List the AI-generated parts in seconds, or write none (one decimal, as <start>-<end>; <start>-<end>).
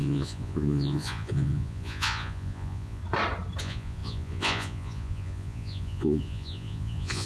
0.0-3.0; 3.6-7.3